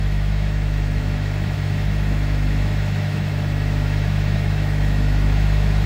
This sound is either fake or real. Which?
fake